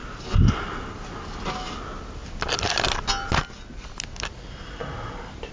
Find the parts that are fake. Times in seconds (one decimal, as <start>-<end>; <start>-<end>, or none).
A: none